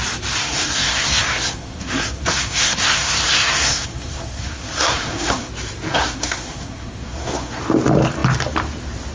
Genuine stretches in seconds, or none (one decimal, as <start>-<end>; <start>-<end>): 0.0-0.4; 5.5-5.9; 7.6-9.1